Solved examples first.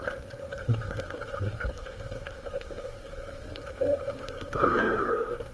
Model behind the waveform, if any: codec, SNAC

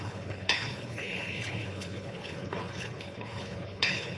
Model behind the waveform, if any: codec, HILCodec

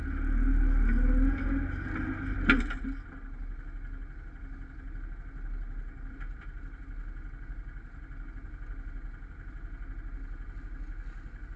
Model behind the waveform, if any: none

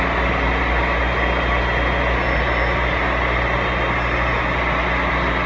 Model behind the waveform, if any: none